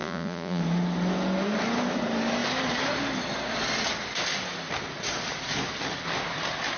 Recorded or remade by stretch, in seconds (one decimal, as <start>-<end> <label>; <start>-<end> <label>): 0.0-0.6 remade; 0.6-6.8 recorded